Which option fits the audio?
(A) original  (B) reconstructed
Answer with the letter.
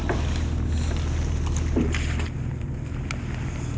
A